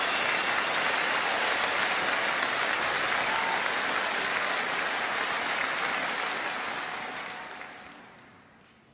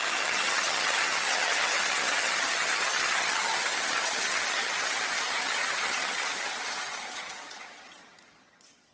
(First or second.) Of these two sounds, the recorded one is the first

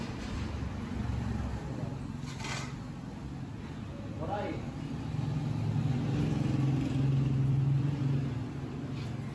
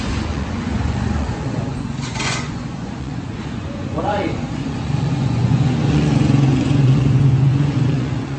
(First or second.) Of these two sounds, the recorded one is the first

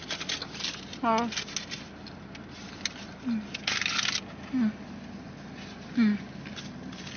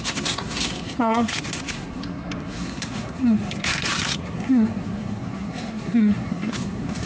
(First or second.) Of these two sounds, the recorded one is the first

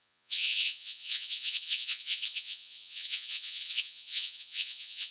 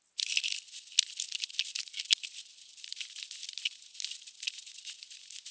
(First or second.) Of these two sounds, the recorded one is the second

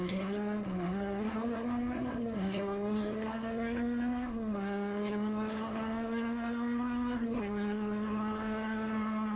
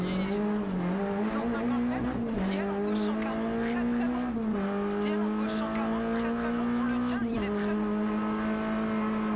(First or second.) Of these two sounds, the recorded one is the second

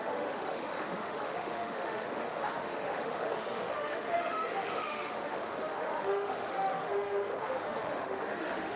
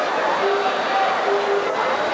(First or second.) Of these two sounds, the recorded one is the second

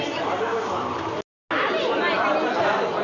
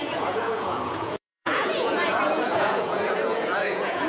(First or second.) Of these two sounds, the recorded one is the first